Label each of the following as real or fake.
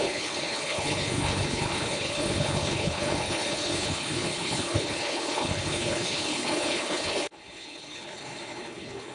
fake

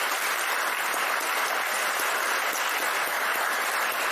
real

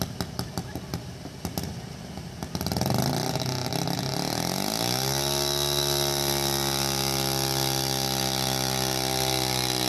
real